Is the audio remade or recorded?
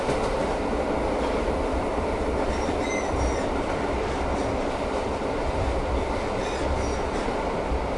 recorded